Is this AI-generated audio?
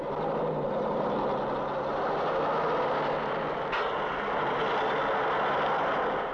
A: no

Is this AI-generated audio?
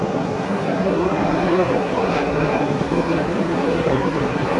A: yes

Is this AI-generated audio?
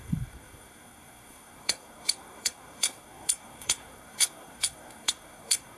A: yes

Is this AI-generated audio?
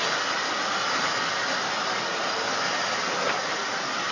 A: no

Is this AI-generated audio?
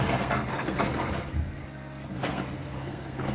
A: yes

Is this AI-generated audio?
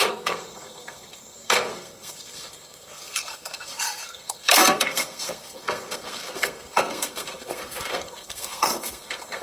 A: yes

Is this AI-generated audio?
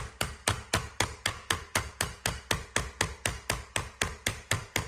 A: no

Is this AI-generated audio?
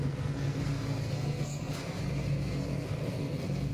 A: yes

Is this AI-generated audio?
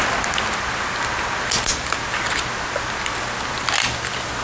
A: no